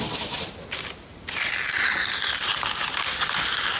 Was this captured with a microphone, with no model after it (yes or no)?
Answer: yes